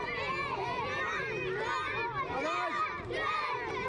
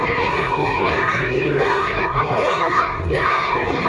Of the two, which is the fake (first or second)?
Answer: second